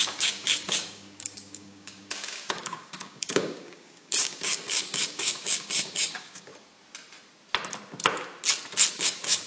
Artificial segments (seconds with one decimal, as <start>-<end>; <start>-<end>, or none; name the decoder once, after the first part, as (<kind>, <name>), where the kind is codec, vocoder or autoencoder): 0.0-6.5 (codec, DAC); 8.9-9.5

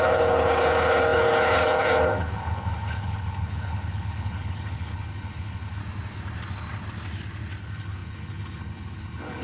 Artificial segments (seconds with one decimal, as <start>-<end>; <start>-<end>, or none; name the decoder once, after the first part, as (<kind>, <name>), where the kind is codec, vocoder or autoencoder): 0.0-5.8 (codec, HILCodec); 7.6-9.4

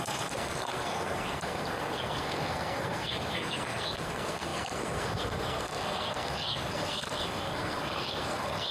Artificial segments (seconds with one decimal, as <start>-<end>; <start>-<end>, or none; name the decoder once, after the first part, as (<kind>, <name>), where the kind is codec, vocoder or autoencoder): 0.0-8.7 (codec, SNAC)

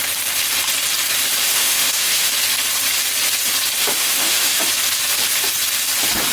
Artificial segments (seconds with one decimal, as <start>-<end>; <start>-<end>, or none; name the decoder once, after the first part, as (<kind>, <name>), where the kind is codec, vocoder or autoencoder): 1.4-2.3 (autoencoder, DAC-VAE); 3.8-4.6

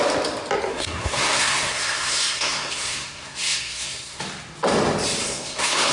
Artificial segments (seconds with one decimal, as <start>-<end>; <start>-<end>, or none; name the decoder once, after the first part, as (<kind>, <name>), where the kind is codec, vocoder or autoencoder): 0.7-4.2 (codec, SNAC); 5.2-5.9